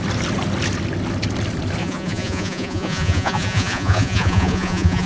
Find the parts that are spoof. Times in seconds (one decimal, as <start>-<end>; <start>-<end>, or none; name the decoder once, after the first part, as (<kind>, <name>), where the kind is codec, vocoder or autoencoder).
1.8-5.1 (vocoder, Vocos)